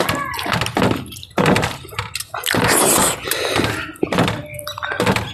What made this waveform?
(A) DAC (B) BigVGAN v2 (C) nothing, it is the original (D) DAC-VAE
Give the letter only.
C